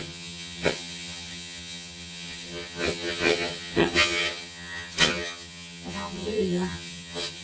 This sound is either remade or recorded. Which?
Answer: remade